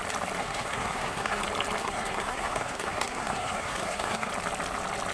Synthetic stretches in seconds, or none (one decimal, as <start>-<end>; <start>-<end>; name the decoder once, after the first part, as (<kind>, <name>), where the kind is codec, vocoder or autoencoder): 0.4-1.4 (codec, SNAC); 1.8-4.3